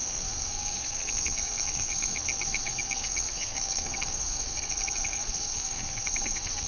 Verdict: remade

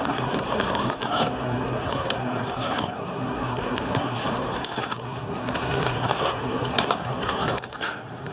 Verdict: remade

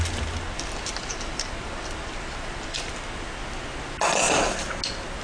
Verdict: recorded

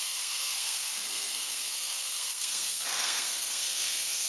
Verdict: remade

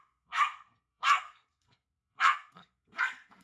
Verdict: remade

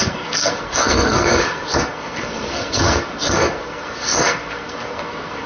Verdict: remade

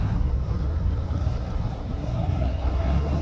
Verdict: remade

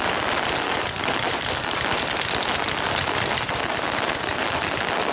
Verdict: recorded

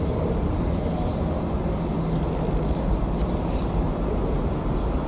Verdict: recorded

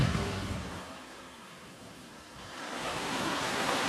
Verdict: remade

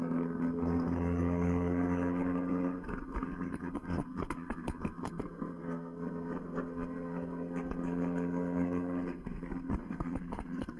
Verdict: remade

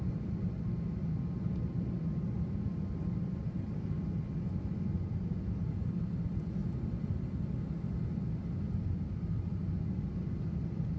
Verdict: recorded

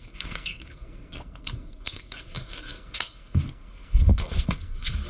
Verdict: remade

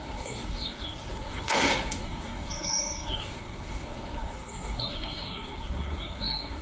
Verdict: remade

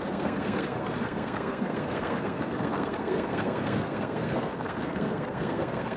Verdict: remade